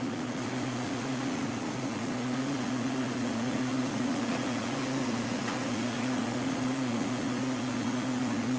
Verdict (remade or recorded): remade